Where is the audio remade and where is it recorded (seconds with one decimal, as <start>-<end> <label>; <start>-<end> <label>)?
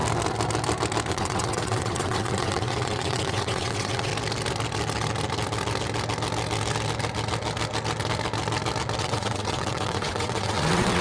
0.0-1.1 recorded; 1.1-4.1 remade; 4.1-9.0 recorded; 9.0-11.0 remade